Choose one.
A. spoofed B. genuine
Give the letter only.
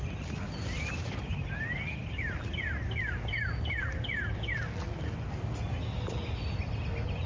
B